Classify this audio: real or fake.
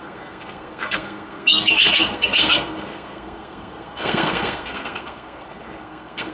fake